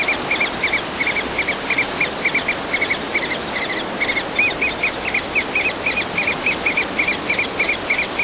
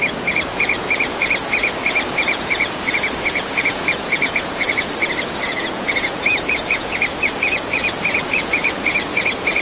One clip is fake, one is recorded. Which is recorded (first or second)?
first